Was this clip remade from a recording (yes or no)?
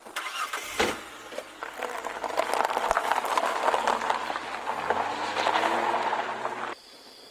no